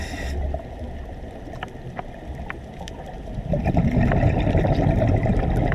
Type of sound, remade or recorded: recorded